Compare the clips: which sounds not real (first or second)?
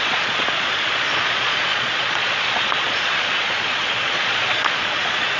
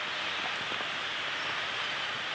first